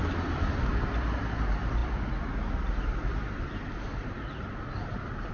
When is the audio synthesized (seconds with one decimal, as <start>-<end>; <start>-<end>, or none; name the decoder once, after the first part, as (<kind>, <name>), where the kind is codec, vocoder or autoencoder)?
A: 0.0-0.7 (vocoder, BigVGAN v2)